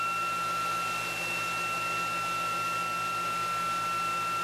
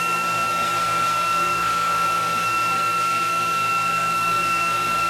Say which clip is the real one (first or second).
first